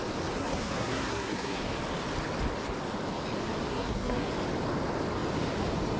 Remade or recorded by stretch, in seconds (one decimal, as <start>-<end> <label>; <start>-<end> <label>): 0.0-0.4 recorded; 0.4-1.6 remade; 1.6-3.7 recorded; 3.7-4.3 remade; 4.3-6.0 recorded